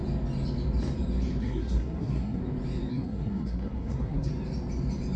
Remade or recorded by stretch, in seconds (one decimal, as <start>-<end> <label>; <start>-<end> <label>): 0.0-1.4 recorded; 1.4-2.4 remade; 2.4-2.9 recorded; 2.9-4.3 remade; 4.3-5.2 recorded